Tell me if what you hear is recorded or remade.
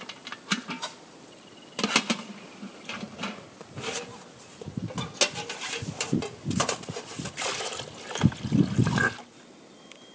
recorded